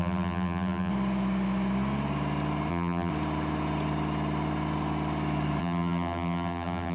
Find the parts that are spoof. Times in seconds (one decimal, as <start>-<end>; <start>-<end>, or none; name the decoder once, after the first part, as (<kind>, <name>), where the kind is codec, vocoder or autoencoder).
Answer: 0.0-0.9 (vocoder, BigVGAN v2); 2.7-3.1; 5.6-6.9